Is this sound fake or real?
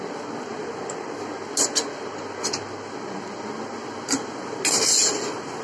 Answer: real